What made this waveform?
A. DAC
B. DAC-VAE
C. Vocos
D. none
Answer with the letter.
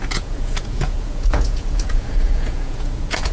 C